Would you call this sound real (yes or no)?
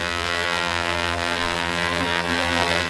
no